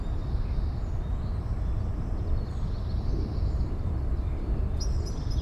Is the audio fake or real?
real